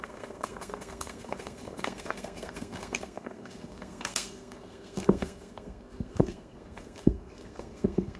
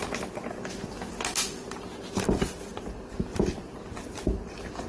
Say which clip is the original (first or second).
second